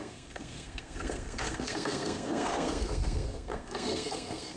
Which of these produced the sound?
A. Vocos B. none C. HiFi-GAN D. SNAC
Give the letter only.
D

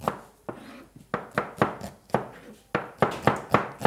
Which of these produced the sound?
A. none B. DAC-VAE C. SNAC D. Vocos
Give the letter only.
A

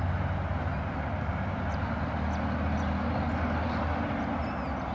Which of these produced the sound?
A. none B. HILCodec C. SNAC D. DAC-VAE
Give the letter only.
A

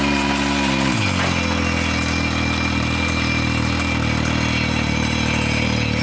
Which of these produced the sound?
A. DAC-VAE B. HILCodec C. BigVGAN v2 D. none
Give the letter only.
D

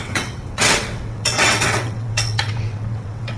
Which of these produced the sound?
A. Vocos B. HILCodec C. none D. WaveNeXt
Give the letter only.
D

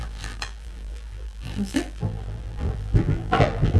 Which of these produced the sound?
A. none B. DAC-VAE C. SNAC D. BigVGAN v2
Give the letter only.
D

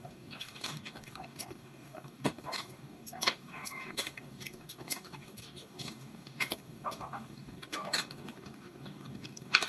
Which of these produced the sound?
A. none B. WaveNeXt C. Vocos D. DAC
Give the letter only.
D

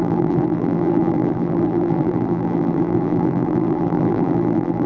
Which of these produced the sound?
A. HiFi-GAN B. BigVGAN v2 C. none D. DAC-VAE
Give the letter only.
B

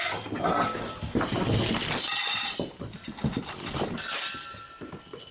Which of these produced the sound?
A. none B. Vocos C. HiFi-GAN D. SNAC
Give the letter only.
A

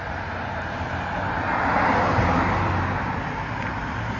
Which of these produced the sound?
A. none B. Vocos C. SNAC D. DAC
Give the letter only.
A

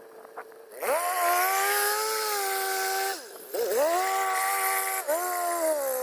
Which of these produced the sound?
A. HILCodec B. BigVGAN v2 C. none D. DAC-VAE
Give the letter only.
C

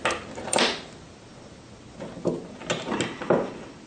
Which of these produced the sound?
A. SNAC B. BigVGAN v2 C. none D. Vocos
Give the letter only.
C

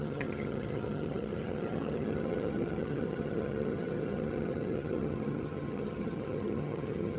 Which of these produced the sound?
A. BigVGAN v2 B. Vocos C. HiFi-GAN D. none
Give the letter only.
C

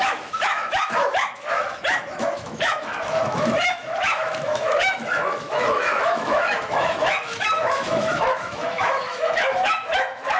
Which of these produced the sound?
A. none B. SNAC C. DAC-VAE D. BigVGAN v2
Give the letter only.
C